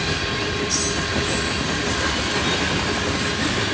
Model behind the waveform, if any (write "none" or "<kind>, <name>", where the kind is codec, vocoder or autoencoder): none